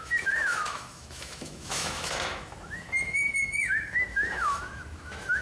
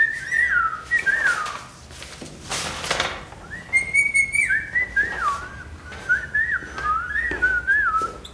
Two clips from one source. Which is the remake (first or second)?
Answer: first